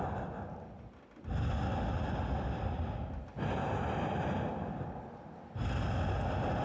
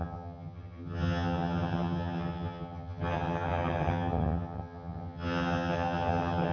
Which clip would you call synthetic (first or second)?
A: second